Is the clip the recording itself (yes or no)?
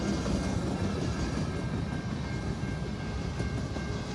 yes